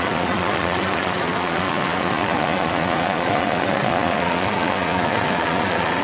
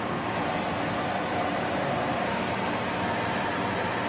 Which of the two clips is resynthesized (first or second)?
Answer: first